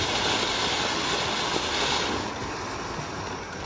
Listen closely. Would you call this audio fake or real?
real